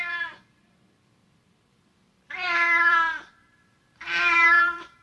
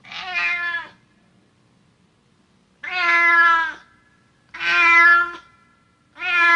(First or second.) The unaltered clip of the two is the second